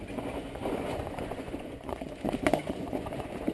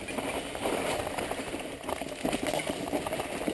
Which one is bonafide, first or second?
second